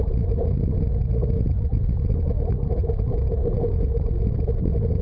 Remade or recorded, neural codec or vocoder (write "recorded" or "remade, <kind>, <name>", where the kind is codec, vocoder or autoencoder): remade, vocoder, Vocos